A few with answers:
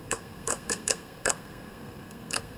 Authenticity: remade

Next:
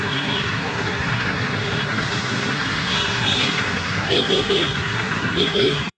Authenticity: remade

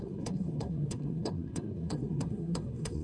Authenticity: remade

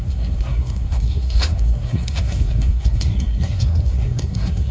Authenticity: remade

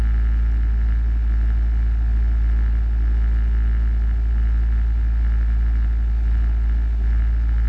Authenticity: recorded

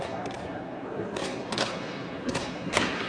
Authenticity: remade